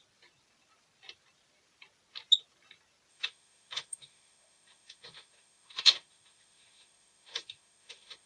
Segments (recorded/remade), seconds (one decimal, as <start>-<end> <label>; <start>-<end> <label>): 0.0-3.1 recorded; 3.1-8.3 remade